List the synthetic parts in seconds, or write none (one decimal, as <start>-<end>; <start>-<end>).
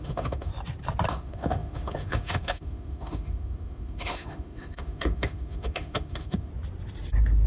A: 0.0-0.5; 1.1-6.5